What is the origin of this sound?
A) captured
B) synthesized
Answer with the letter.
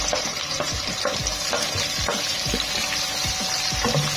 A